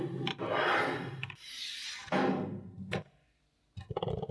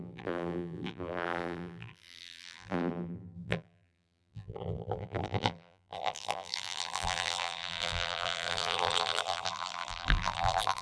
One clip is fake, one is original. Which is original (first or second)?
first